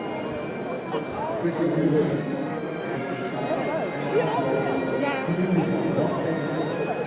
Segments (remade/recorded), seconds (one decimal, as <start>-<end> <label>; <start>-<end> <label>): 0.0-1.4 recorded; 1.4-3.3 remade; 3.3-7.1 recorded